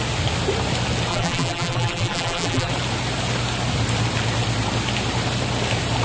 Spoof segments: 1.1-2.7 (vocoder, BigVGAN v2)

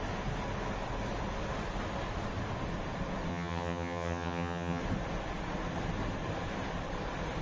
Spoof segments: 3.3-4.8 (vocoder, HiFi-GAN)

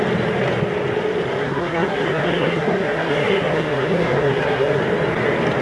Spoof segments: 1.4-4.8 (codec, SNAC)

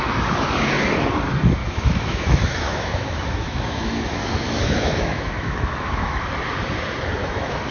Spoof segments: 1.6-6.2 (autoencoder, DAC-VAE); 7.2-7.7

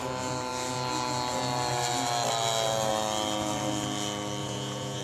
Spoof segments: 4.4-5.0 (vocoder, Vocos)

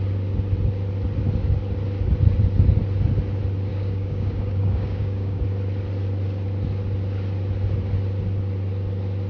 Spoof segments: 3.7-5.4 (codec, DAC)

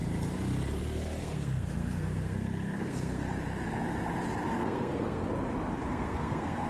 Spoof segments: 1.2-3.2 (codec, SNAC); 4.5-5.2; 5.9-6.7

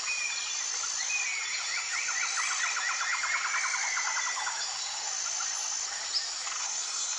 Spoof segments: 6.6-7.2 (codec, SNAC)